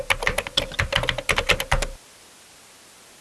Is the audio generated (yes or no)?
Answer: no